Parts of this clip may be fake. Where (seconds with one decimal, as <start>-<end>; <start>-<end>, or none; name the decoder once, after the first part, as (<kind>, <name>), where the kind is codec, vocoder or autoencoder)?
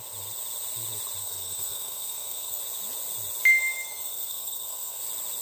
1.2-2.6 (codec, SNAC); 3.5-5.0